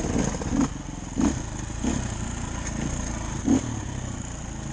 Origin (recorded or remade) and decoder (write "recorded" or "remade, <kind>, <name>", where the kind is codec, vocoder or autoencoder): recorded